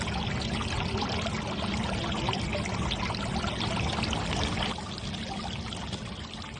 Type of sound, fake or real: real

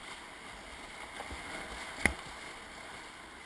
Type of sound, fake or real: real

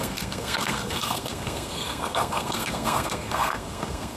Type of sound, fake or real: fake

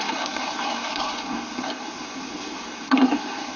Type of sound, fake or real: fake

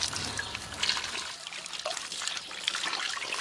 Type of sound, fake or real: real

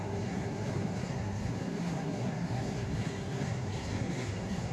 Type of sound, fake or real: fake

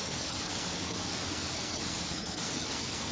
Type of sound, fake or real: fake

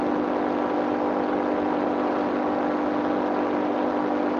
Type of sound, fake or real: real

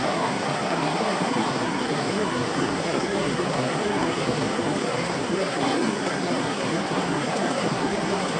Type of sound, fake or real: fake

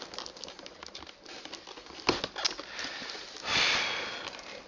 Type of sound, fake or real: real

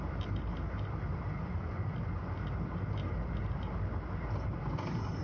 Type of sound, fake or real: real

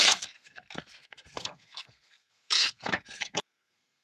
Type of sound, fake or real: fake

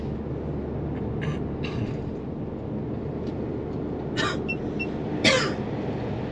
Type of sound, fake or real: real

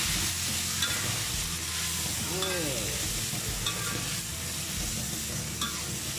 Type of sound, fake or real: real